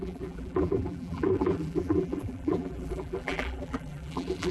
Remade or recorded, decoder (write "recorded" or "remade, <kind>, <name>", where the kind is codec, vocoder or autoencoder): remade, vocoder, BigVGAN v2